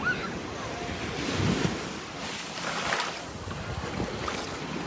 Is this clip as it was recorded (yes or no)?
yes